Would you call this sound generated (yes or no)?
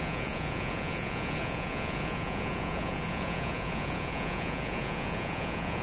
yes